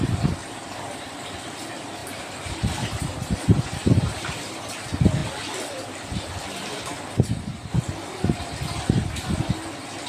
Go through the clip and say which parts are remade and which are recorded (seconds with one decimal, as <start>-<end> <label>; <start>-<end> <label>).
0.0-0.4 recorded; 0.4-1.0 remade; 1.0-2.0 recorded; 2.0-4.4 remade; 4.4-10.1 recorded